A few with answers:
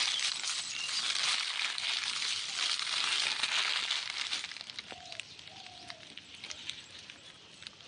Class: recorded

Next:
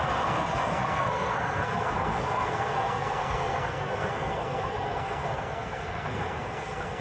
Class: remade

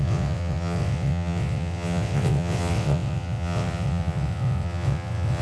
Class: remade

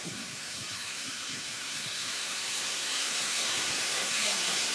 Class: remade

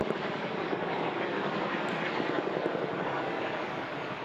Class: remade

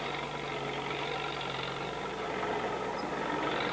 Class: recorded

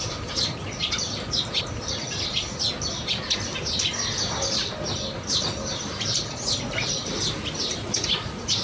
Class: recorded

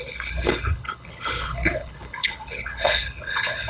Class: remade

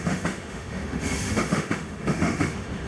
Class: remade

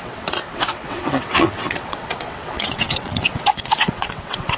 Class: remade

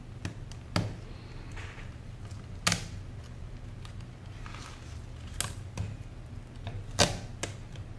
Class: recorded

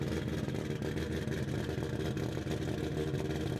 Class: recorded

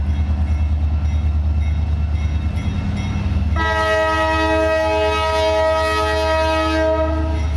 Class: recorded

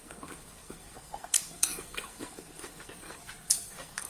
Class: remade